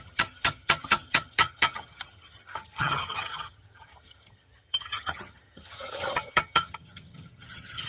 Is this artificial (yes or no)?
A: yes